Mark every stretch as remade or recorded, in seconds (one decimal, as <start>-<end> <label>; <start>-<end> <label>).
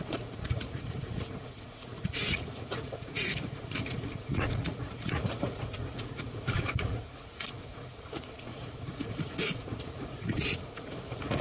0.0-11.4 remade